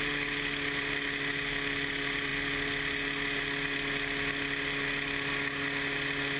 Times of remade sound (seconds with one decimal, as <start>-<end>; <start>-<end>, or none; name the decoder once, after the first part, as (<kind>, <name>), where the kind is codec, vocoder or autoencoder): none